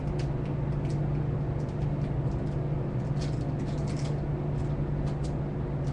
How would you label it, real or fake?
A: real